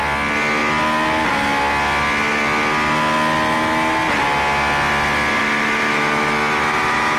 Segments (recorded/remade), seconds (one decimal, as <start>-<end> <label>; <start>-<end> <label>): 0.0-5.4 recorded; 5.4-7.2 remade